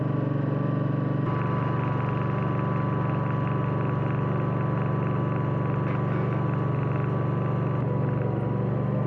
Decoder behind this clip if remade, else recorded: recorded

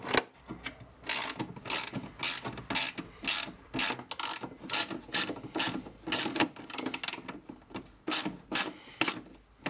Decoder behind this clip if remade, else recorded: recorded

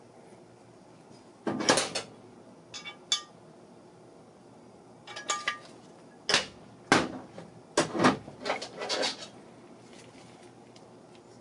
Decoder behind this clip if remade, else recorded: recorded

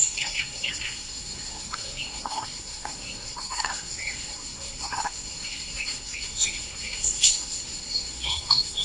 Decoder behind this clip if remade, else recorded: remade, codec, SNAC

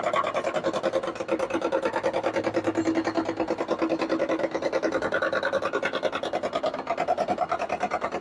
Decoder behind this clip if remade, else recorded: recorded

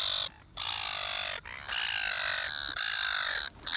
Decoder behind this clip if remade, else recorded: recorded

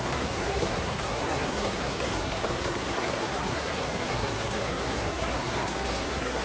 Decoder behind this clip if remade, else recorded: remade, codec, SNAC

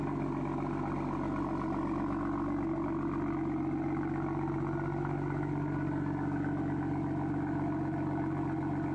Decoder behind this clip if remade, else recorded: recorded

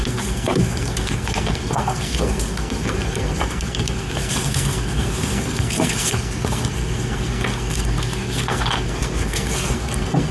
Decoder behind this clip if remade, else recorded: remade, codec, SNAC